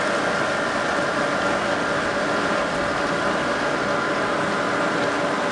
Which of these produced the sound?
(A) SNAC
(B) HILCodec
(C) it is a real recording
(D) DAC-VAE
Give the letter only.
C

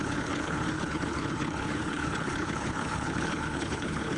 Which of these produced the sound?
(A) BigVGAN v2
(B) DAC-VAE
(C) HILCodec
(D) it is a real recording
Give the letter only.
C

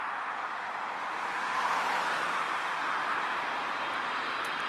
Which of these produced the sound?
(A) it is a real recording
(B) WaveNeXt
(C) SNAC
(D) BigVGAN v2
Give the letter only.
D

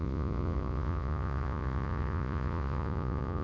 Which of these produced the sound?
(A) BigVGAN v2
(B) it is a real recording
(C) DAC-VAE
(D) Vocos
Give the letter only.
D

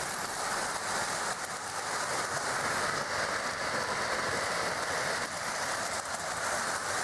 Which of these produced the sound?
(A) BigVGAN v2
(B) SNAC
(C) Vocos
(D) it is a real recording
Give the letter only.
D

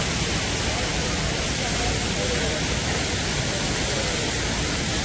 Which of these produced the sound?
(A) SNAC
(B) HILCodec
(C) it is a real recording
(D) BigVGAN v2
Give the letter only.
C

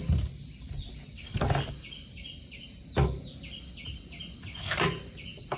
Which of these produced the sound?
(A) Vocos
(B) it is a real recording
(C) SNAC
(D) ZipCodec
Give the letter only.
B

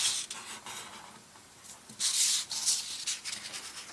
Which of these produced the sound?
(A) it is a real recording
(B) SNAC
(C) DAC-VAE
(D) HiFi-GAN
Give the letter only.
A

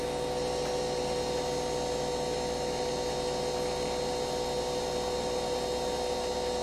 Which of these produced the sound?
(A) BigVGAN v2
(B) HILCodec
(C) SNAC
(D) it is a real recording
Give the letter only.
D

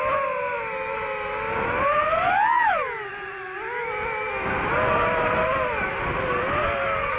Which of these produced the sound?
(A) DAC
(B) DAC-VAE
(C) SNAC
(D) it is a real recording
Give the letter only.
D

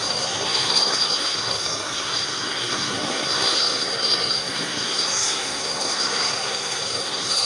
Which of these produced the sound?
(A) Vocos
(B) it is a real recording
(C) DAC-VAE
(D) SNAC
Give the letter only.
D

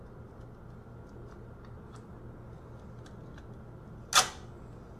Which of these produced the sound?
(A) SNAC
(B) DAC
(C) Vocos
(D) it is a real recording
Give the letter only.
D